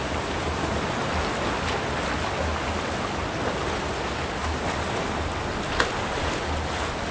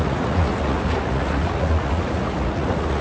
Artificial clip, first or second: second